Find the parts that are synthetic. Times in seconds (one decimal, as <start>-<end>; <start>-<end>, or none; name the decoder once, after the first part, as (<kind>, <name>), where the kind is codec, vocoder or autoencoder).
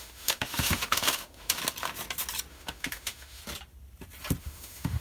0.0-1.6 (autoencoder, DAC-VAE); 2.5-3.4; 4.4-5.0